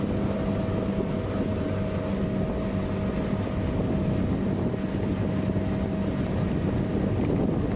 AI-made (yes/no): no